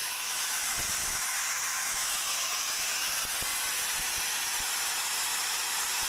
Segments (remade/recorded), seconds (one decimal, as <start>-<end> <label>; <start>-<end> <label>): 0.0-0.6 remade; 0.6-1.0 recorded; 1.0-3.1 remade; 3.1-6.1 recorded